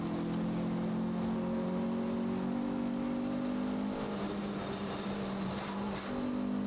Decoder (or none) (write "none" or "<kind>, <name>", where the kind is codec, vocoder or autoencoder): none